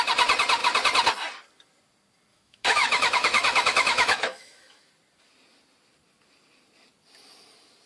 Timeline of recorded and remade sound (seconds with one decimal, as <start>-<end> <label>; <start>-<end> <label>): 0.0-2.3 recorded; 2.3-4.9 remade; 4.9-7.9 recorded